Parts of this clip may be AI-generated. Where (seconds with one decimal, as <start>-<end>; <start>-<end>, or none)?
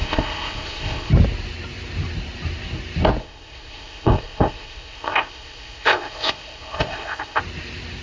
0.0-1.1; 3.2-7.4